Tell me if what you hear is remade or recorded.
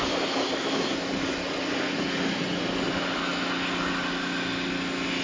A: recorded